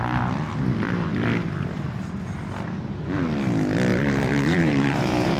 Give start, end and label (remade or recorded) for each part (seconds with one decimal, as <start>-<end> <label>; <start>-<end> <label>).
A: 0.0-3.9 recorded; 3.9-5.4 remade